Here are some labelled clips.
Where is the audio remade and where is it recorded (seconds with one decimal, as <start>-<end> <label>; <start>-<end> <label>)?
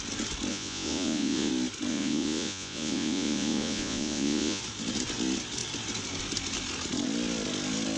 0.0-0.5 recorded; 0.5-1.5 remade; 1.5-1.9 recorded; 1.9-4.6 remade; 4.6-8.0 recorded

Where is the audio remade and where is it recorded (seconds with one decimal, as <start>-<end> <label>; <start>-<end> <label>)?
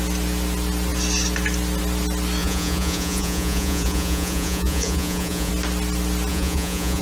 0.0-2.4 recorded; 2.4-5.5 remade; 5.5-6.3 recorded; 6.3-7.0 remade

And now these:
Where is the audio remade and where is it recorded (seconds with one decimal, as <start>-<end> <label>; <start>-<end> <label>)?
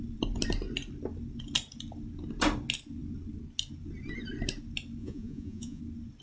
0.0-5.0 recorded; 5.0-5.8 remade; 5.8-6.2 recorded